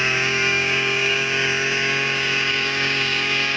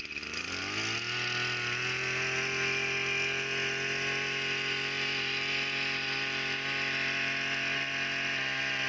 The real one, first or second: second